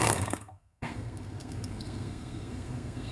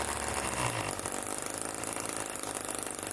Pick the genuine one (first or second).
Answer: second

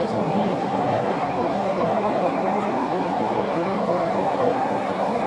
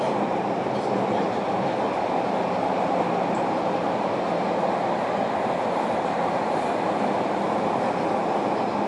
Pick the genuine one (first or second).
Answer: second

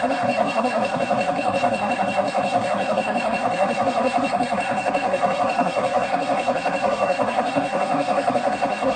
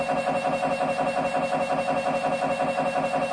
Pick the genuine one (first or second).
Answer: second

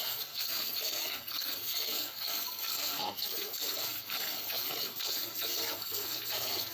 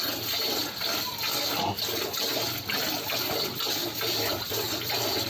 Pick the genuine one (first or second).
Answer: second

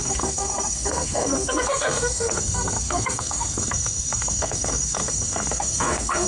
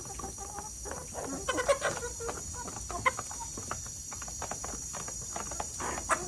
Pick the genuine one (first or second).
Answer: second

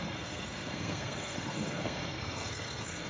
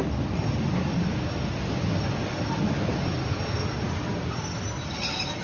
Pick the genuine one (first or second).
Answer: second